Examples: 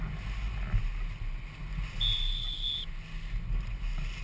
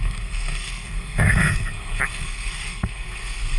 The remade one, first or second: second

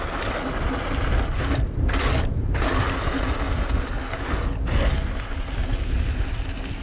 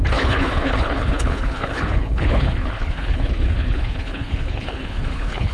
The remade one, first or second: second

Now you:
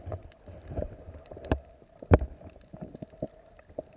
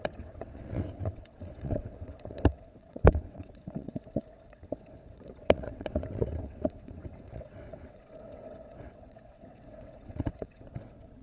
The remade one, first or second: second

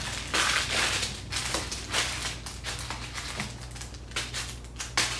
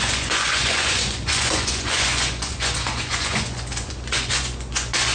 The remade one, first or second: second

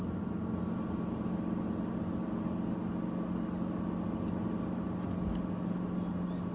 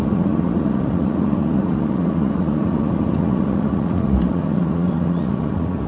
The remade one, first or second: second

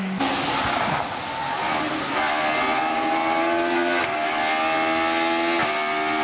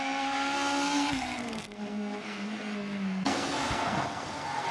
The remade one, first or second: second